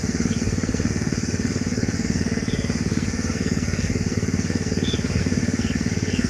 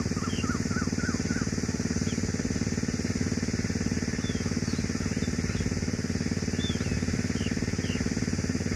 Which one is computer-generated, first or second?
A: first